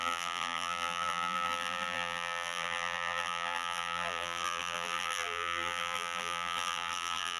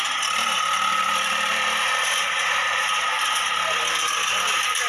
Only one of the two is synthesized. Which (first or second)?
first